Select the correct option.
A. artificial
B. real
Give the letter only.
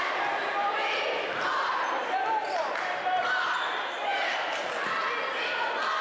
B